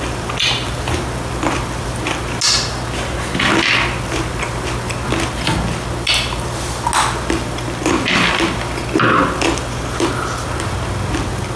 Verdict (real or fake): real